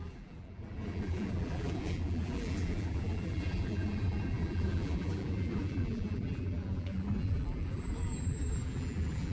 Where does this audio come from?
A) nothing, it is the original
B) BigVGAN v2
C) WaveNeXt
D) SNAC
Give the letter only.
B